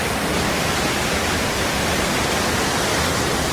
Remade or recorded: recorded